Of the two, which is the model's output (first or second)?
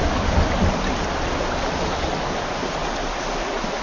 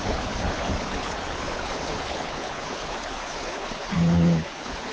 second